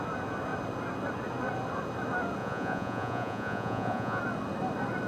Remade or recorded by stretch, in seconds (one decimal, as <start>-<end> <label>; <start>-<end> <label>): 0.0-2.4 recorded; 2.4-4.2 remade; 4.2-5.1 recorded